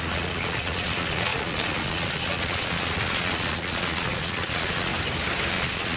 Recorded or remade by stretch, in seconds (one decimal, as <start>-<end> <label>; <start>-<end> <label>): 0.0-4.9 remade; 4.9-5.5 recorded; 5.5-6.0 remade